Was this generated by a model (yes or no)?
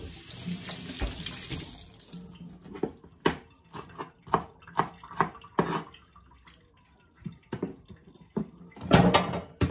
no